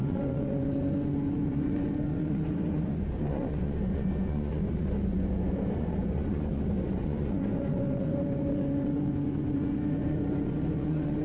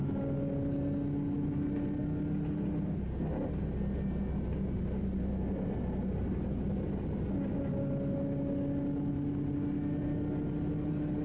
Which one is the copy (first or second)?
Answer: first